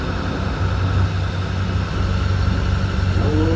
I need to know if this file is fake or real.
real